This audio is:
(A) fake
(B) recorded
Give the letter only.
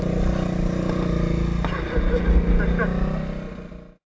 B